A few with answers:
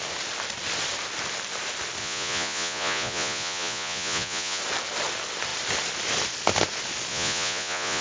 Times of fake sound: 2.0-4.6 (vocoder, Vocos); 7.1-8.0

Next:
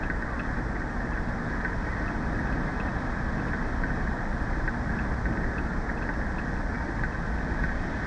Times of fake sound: none

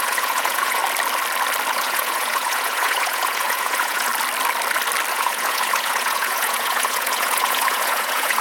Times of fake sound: 0.0-0.8 (vocoder, Vocos); 1.7-4.1; 5.1-8.4

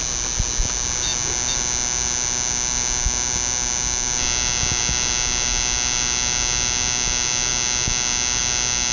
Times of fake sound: none

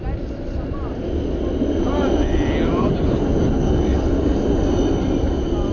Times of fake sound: none

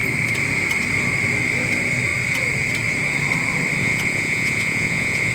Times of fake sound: 3.8-5.3 (vocoder, Vocos)